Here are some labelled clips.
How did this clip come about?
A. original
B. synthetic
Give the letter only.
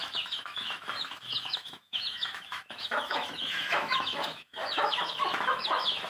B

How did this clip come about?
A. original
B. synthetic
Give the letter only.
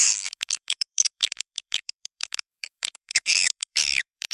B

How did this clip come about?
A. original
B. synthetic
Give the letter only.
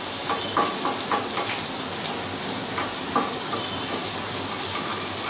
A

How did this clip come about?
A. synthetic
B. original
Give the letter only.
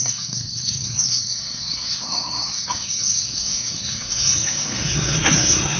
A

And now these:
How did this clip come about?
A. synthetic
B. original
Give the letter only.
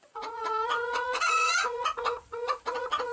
A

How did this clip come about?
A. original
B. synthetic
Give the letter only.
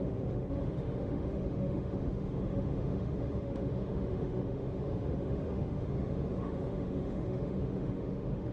B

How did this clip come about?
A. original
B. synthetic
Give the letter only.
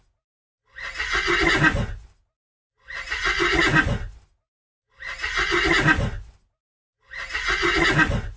A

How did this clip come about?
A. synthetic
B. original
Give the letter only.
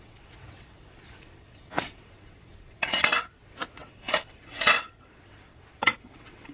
A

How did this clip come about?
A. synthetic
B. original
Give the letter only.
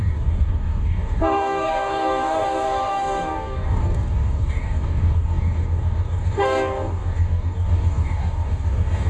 A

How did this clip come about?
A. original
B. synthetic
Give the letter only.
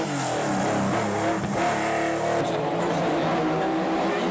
A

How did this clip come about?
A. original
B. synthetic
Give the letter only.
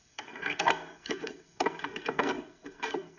B